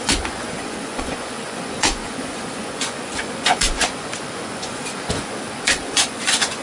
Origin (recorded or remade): remade